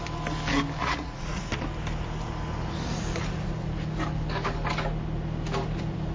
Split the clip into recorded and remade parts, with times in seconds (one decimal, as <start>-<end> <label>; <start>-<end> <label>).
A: 0.0-0.8 recorded; 0.8-1.4 remade; 1.4-6.1 recorded